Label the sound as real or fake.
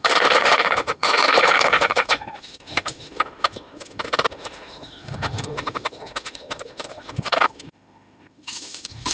fake